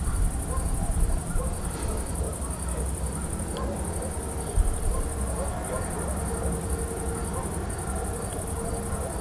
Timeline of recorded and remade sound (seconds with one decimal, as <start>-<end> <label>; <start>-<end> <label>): 0.0-9.2 recorded